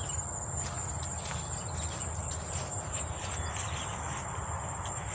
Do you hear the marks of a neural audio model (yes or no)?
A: no